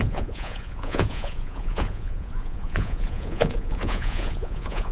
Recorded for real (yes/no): no